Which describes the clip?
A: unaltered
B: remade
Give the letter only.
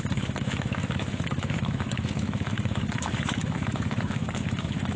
B